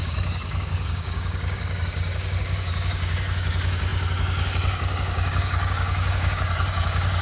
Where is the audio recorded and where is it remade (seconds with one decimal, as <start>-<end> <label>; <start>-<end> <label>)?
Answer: 0.0-7.2 remade